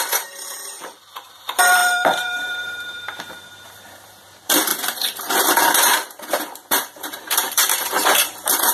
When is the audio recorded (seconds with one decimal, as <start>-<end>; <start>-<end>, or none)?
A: 4.7-5.4